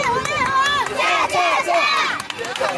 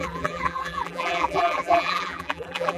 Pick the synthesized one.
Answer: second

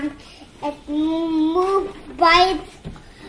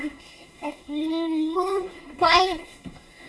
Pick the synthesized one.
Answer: second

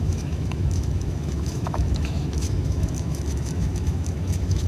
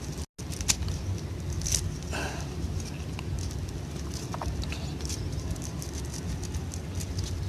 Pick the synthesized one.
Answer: first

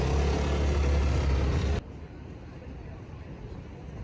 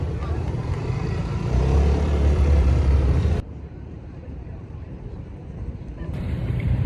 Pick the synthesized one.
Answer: second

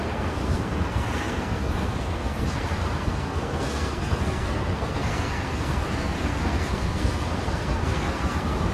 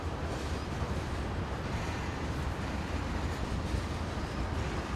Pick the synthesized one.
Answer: first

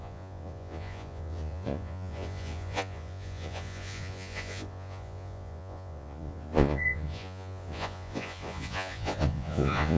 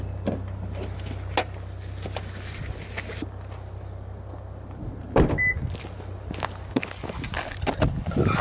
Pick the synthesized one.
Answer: first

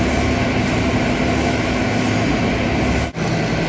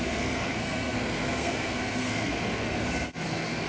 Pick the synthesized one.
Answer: second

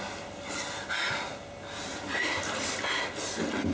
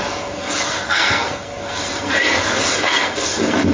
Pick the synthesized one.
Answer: second